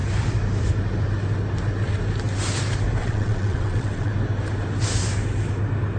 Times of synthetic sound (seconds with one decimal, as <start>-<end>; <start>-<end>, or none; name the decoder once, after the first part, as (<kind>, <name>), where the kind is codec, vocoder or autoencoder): 3.0-4.1 (vocoder, WaveNeXt)

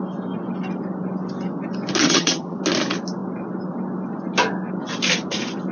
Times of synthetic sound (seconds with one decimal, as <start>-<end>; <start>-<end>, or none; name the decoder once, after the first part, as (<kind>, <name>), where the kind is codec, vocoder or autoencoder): 2.0-2.6 (vocoder, HiFi-GAN)

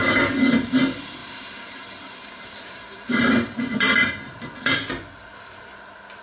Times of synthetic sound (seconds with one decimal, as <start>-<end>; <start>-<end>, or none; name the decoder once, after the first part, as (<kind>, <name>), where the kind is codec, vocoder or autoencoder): 1.2-4.7 (vocoder, BigVGAN v2)

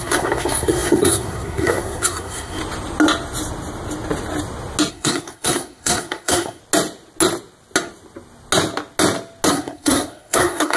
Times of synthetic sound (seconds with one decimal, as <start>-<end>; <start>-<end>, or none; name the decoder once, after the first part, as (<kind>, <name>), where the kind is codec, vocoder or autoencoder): 0.0-2.6 (codec, SNAC); 4.9-6.6; 9.5-10.8

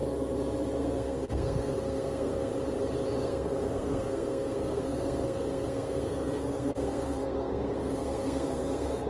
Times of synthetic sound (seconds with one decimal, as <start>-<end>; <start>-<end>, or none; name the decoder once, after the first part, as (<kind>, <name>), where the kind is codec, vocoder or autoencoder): 0.8-2.5 (codec, SNAC); 3.2-9.1

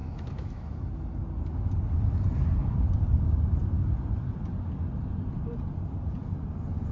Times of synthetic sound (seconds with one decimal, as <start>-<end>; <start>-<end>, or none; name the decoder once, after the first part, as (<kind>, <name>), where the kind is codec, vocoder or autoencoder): 0.0-0.7 (autoencoder, DAC-VAE)

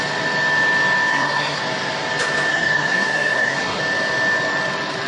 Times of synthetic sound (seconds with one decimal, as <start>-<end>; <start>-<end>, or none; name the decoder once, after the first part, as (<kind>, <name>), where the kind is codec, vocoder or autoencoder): 1.1-1.6 (codec, SNAC); 2.5-3.8